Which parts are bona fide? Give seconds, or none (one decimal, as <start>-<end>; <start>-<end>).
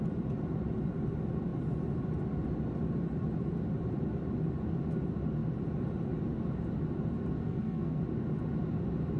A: 0.0-7.4; 8.0-9.2